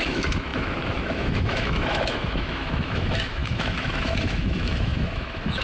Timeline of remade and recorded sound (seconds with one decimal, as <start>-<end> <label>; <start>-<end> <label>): 0.0-5.6 remade

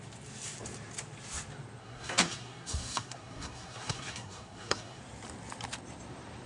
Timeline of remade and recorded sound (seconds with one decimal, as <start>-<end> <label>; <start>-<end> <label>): 0.0-1.8 recorded; 1.8-5.0 remade; 5.0-6.5 recorded

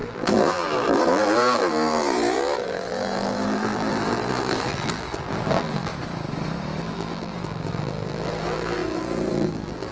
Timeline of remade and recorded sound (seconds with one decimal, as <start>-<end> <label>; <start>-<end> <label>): 0.0-5.9 remade; 5.9-6.8 recorded; 6.8-9.9 remade

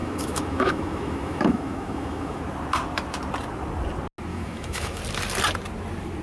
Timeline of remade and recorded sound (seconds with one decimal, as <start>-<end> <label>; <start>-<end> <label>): 0.0-2.4 remade; 2.4-4.3 recorded; 4.3-5.0 remade; 5.0-6.2 recorded

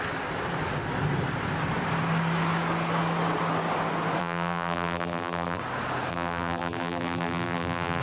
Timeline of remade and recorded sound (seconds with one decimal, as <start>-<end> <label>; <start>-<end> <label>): 0.0-4.2 recorded; 4.2-5.6 remade; 5.6-6.1 recorded; 6.1-8.0 remade

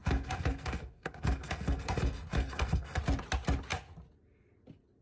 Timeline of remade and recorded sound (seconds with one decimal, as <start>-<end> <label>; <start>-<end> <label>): 0.0-3.0 remade; 3.0-5.0 recorded